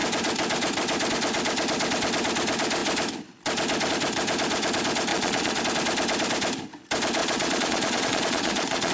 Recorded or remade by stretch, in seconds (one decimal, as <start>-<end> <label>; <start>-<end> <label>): 0.0-5.1 recorded; 5.1-5.6 remade; 5.6-7.2 recorded; 7.2-8.9 remade